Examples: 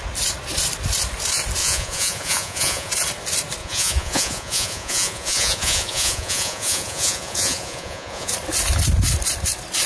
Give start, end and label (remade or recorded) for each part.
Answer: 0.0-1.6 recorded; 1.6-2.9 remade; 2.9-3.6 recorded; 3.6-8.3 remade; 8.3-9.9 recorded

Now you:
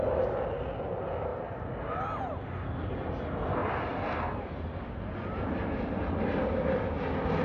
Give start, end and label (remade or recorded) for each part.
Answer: 0.0-7.4 recorded

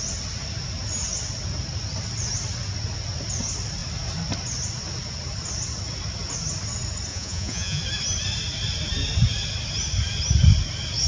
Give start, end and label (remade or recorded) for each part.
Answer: 0.0-7.1 recorded; 7.1-7.8 remade; 7.8-11.1 recorded

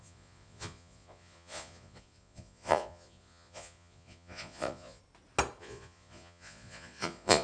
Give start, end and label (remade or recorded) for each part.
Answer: 0.0-5.0 remade; 5.0-5.6 recorded; 5.6-7.4 remade

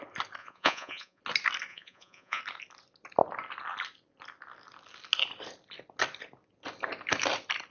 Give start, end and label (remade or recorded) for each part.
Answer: 0.0-0.4 recorded; 0.4-1.2 remade; 1.2-1.7 recorded; 1.7-2.4 remade; 2.4-7.7 recorded

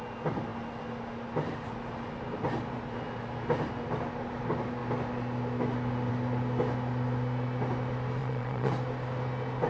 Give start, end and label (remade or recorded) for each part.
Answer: 0.0-8.2 recorded; 8.2-8.7 remade; 8.7-9.7 recorded

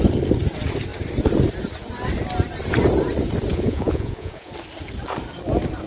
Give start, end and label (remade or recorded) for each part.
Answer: 0.0-3.5 recorded; 3.5-4.5 remade; 4.5-5.9 recorded

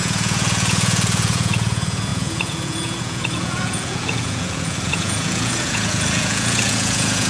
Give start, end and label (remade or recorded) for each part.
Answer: 0.0-7.3 remade